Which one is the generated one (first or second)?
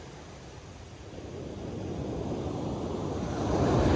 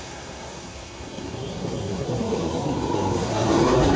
second